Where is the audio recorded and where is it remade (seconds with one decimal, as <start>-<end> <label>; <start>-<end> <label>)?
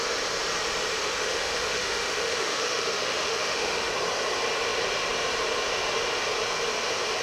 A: 0.0-1.0 recorded; 1.0-3.9 remade; 3.9-7.2 recorded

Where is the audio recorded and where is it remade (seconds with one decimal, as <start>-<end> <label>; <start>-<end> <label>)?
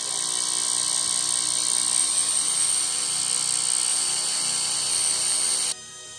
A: 0.0-2.0 recorded; 2.0-3.2 remade; 3.2-3.9 recorded; 3.9-6.2 remade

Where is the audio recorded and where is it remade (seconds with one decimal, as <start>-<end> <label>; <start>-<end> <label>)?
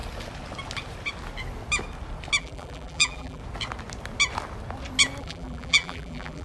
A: 0.0-2.4 recorded; 2.4-3.4 remade; 3.4-5.2 recorded; 5.2-6.4 remade